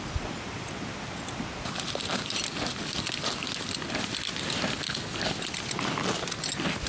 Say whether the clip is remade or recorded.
recorded